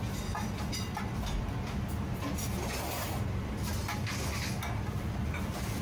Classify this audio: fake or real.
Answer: real